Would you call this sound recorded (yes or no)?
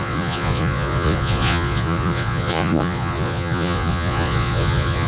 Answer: no